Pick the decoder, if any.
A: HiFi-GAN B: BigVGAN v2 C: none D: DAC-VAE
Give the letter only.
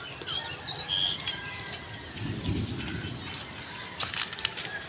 C